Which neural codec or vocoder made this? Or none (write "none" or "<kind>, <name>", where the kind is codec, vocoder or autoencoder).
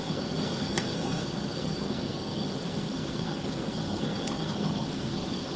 codec, SNAC